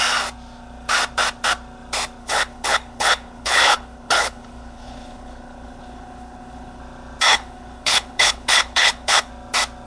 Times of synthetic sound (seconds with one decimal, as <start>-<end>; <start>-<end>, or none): 2.2-6.8; 7.3-9.3